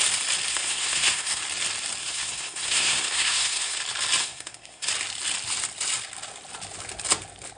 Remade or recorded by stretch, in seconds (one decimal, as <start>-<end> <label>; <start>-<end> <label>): 0.0-0.5 recorded; 0.5-1.4 remade; 1.4-2.0 recorded; 2.0-3.8 remade; 3.8-4.2 recorded; 4.2-4.9 remade; 4.9-7.6 recorded